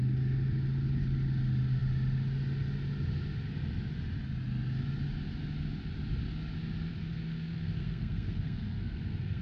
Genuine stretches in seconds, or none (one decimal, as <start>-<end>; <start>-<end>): 0.0-6.9